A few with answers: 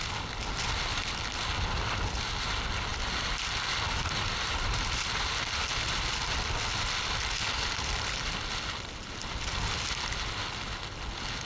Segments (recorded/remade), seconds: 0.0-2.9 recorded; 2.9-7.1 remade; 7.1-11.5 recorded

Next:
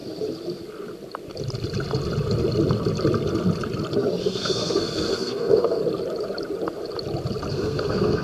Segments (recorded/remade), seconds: 0.0-4.2 recorded; 4.2-5.8 remade; 5.8-7.5 recorded; 7.5-8.2 remade

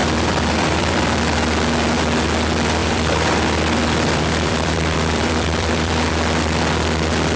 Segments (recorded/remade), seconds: 0.0-1.0 remade; 1.0-2.8 recorded; 2.8-6.1 remade; 6.1-7.4 recorded

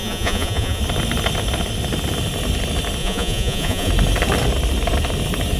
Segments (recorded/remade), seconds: 0.0-0.8 remade; 0.8-3.0 recorded; 3.0-3.9 remade; 3.9-5.6 recorded

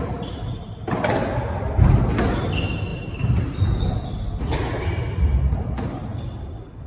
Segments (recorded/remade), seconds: 0.0-6.9 recorded